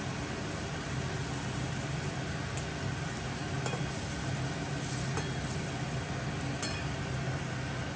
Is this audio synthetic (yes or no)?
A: no